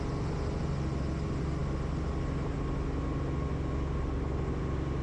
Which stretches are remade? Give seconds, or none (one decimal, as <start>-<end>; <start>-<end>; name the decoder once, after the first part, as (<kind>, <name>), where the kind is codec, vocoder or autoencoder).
none